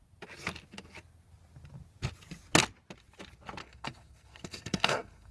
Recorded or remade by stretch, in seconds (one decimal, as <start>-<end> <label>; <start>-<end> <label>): 0.0-3.6 recorded; 3.6-5.3 remade